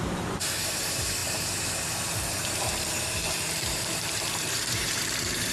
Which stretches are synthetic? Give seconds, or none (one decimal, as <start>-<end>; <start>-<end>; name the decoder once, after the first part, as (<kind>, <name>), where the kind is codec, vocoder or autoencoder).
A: 0.0-5.5 (vocoder, BigVGAN v2)